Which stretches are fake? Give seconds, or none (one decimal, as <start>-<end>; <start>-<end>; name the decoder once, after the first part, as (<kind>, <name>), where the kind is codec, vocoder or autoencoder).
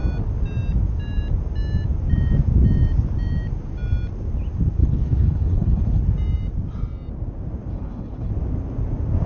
4.8-6.0 (codec, HILCodec); 7.7-8.3